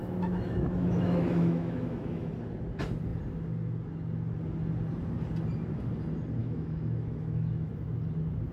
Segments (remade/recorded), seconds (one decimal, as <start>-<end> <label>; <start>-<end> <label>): 0.0-2.3 remade; 2.3-6.4 recorded; 6.4-7.7 remade; 7.7-8.5 recorded